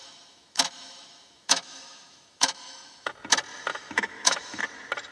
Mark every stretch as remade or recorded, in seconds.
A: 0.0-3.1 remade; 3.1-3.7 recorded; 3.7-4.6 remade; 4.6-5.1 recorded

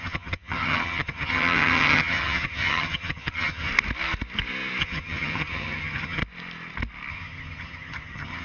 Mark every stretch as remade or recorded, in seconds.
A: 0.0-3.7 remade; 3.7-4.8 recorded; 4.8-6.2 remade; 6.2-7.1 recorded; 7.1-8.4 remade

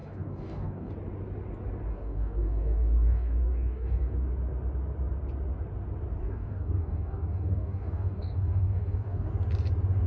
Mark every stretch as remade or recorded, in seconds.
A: 0.0-0.9 remade; 0.9-1.9 recorded; 1.9-4.3 remade; 4.3-6.2 recorded; 6.2-9.3 remade; 9.3-10.1 recorded

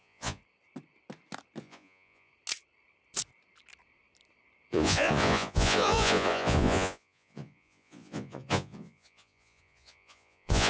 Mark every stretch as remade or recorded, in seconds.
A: 0.0-0.4 remade; 0.4-1.6 recorded; 1.6-2.3 remade; 2.3-4.7 recorded; 4.7-10.7 remade

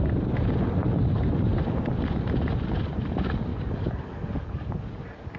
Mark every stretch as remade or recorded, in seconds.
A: 0.0-3.5 recorded; 3.5-4.8 remade; 4.8-5.4 recorded